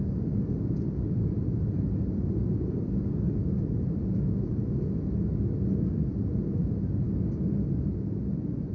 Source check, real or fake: real